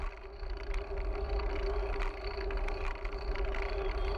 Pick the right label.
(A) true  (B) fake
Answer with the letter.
A